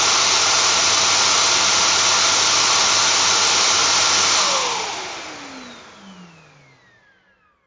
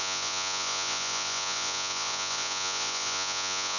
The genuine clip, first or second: first